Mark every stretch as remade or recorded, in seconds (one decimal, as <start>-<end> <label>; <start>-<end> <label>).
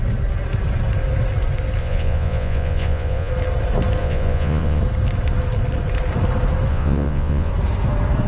0.0-1.8 recorded; 1.8-3.3 remade; 3.3-4.0 recorded; 4.0-4.8 remade; 4.8-6.7 recorded; 6.7-7.5 remade; 7.5-8.3 recorded